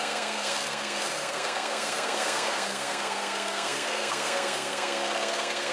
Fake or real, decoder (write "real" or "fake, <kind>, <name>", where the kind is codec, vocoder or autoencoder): fake, codec, SNAC